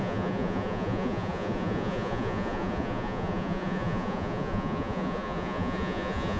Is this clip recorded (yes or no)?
no